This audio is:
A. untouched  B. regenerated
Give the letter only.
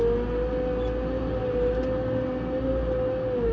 A